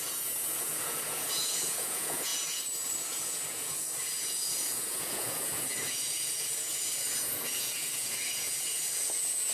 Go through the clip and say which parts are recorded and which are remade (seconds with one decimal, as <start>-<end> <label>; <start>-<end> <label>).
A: 0.0-9.5 remade